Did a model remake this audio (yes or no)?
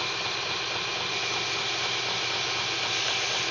no